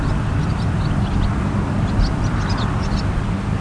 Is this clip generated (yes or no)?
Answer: no